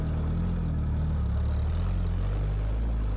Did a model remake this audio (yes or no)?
no